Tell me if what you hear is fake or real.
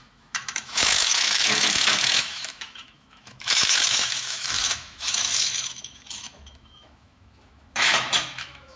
fake